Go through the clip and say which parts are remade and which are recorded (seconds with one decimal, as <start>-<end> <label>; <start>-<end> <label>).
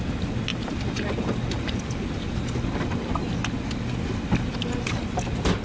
0.0-5.6 recorded